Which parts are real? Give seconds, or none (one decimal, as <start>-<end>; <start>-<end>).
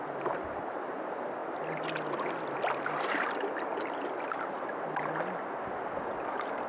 0.0-6.7